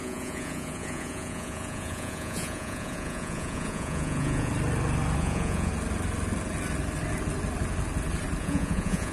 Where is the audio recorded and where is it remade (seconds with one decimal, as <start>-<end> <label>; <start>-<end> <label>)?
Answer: 0.0-4.5 remade; 4.5-5.2 recorded; 5.2-5.7 remade; 5.7-8.4 recorded; 8.4-9.1 remade